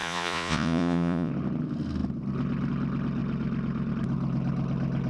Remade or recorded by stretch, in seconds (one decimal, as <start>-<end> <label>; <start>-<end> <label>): 0.0-1.3 remade; 1.3-5.1 recorded